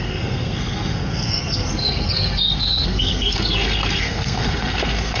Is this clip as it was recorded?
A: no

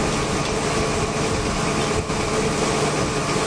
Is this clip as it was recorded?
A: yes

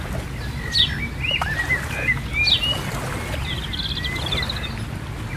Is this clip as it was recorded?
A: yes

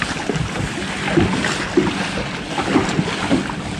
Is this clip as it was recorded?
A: yes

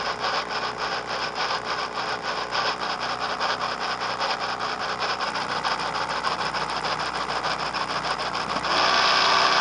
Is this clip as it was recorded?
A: yes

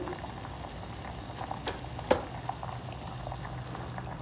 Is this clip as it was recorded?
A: yes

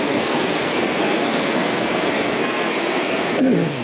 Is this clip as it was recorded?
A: no